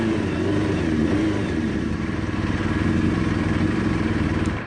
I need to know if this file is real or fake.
fake